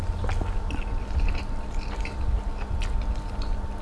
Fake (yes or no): no